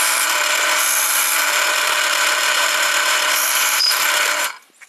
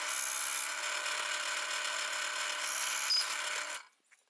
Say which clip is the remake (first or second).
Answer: first